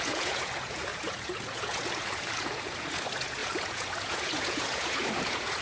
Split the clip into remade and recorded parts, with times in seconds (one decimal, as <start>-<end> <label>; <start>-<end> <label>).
0.0-5.6 remade